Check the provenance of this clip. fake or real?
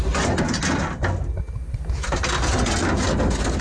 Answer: real